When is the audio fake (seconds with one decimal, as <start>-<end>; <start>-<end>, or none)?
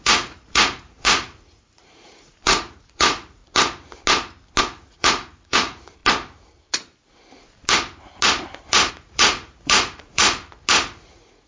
0.0-3.4; 4.6-6.0; 8.9-10.4; 10.9-11.5